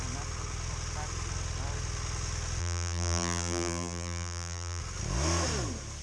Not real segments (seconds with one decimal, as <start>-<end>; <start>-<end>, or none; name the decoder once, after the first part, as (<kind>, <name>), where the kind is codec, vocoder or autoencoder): 2.6-4.8 (vocoder, BigVGAN v2)